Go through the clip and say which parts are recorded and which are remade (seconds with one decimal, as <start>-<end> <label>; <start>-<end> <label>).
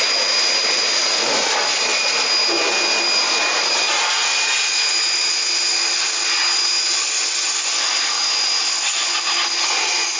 0.0-10.2 recorded